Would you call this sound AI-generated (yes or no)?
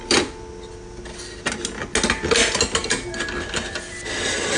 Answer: no